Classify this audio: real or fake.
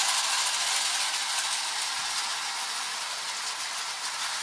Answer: real